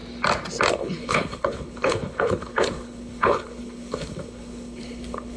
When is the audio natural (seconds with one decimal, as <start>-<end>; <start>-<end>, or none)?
0.0-0.7